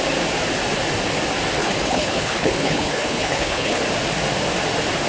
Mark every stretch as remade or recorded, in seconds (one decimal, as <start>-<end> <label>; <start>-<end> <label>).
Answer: 0.0-1.6 recorded; 1.6-3.8 remade; 3.8-5.1 recorded